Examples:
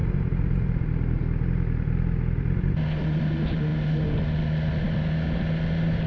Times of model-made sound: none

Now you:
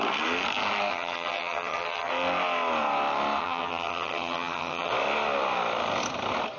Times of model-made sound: 0.9-2.1; 3.4-4.9

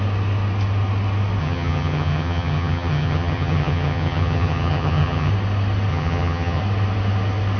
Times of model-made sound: 1.4-5.3; 5.9-6.6

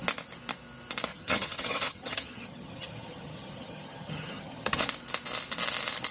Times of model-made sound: 1.1-4.8

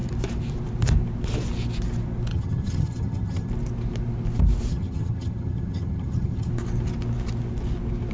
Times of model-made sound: 2.3-3.5; 4.7-6.5

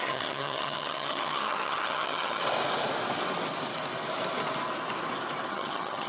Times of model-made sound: 0.0-2.4; 5.5-6.1